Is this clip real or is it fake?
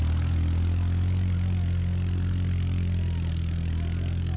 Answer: real